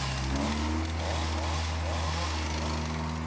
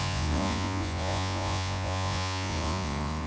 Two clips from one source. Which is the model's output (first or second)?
second